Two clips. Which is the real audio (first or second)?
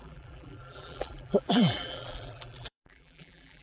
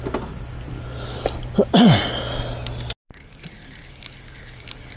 second